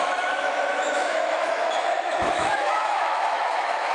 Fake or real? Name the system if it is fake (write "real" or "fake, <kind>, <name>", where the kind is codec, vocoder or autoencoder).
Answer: fake, autoencoder, DAC-VAE